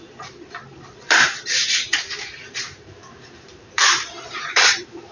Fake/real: fake